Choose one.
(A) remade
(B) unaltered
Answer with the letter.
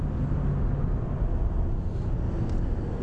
B